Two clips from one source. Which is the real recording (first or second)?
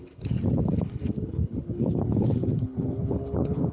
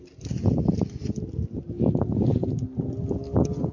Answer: second